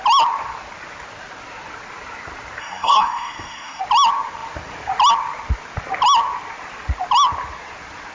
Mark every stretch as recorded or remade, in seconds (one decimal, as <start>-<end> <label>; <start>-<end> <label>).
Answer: 0.0-2.6 recorded; 2.6-3.8 remade; 3.8-8.1 recorded